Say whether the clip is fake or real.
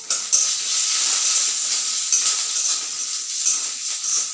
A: real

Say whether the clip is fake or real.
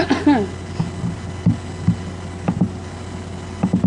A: real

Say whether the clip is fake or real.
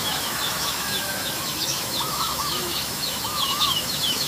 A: fake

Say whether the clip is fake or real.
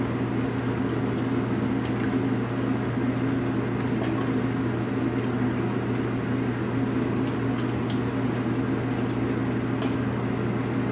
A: real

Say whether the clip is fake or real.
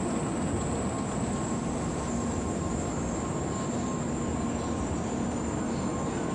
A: real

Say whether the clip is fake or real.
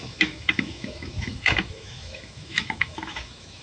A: fake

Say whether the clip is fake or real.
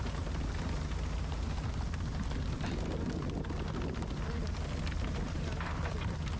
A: real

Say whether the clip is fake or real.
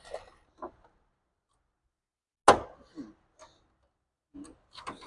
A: real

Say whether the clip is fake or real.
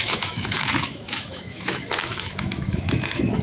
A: fake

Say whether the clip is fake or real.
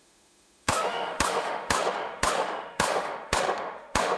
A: fake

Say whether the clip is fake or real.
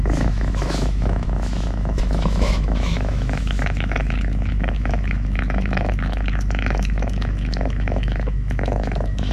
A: fake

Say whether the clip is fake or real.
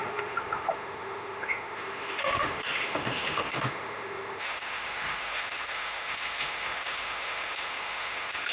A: fake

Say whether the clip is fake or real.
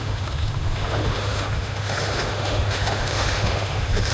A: fake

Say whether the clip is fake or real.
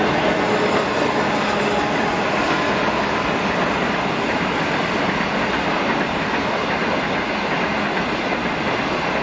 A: real